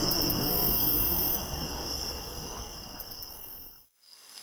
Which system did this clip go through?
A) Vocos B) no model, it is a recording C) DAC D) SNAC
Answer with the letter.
D